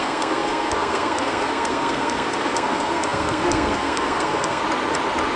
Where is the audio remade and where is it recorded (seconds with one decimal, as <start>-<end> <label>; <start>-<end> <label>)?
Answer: 0.0-4.6 remade; 4.6-5.4 recorded